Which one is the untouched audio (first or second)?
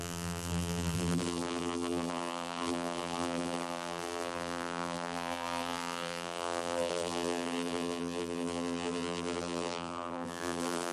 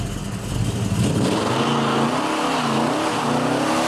second